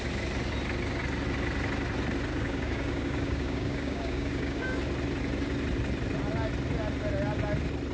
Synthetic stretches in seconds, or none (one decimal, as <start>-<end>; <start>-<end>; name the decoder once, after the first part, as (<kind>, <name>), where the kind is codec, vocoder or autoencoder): 2.3-4.8 (codec, DAC)